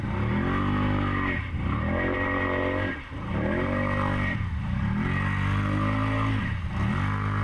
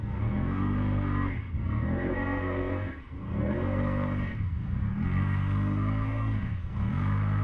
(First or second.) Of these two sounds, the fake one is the second